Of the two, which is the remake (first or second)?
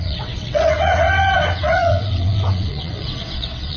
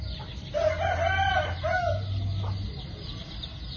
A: first